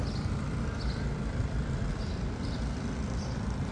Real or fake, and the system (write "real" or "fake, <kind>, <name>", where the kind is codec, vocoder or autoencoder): fake, vocoder, BigVGAN v2